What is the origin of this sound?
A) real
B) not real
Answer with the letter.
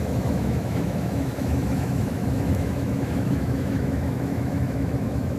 B